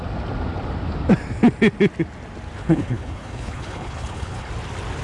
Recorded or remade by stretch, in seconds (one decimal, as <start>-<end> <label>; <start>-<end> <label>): 0.0-2.6 recorded; 2.6-4.5 remade; 4.5-5.0 recorded